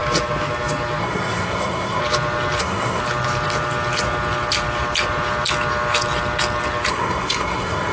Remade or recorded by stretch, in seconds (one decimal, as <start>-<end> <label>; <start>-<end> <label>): 0.0-1.0 recorded; 1.0-2.0 remade; 2.0-2.6 recorded; 2.6-3.0 remade; 3.0-6.9 recorded; 6.9-7.9 remade